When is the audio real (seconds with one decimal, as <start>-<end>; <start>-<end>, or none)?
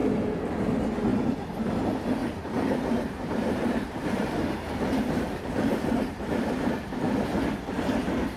0.0-2.2; 6.7-8.4